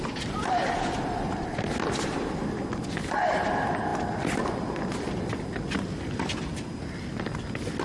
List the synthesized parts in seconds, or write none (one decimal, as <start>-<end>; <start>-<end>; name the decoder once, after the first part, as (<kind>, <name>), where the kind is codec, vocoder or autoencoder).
none